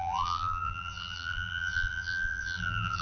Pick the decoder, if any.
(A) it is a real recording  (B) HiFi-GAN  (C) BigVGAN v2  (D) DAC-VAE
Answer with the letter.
C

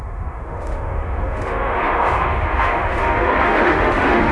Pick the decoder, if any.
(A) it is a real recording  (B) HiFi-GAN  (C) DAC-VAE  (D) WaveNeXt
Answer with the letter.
C